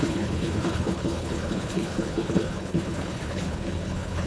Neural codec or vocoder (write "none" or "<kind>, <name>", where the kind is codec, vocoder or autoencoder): codec, HILCodec